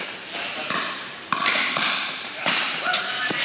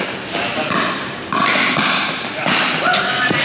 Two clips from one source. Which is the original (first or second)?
second